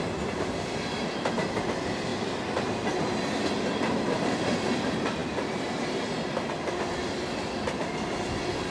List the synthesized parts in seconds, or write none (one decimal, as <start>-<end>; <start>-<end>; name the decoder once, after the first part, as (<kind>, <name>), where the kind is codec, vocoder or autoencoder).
none